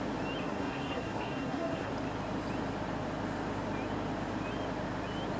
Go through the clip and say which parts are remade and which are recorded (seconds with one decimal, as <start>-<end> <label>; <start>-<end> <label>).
0.0-0.4 recorded; 0.4-1.9 remade; 1.9-5.4 recorded